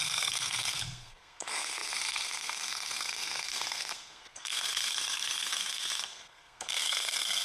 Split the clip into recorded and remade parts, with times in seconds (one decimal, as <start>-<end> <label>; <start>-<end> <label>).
0.0-7.4 remade